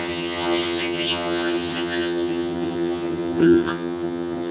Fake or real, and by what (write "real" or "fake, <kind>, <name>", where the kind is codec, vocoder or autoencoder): fake, vocoder, HiFi-GAN